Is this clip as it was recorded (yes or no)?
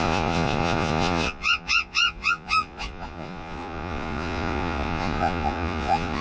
no